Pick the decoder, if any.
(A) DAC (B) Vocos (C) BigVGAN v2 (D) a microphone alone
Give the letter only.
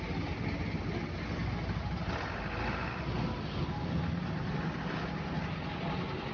D